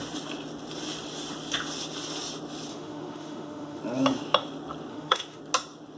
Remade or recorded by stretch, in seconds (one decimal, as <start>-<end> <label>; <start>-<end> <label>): 0.0-2.7 recorded; 2.7-3.8 remade; 3.8-4.9 recorded; 4.9-5.4 remade; 5.4-6.0 recorded